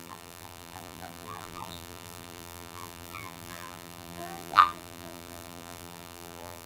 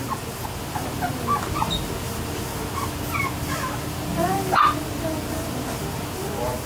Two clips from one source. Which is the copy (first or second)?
first